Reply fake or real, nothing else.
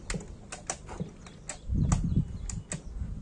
real